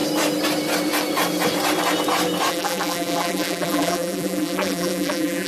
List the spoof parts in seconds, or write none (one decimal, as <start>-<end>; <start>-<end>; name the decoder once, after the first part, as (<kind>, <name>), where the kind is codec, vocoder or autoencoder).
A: 2.5-5.5 (vocoder, BigVGAN v2)